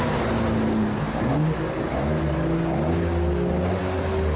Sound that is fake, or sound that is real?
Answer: real